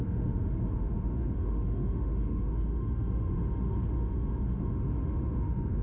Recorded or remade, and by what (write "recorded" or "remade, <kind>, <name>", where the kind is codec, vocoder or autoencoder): remade, autoencoder, DAC-VAE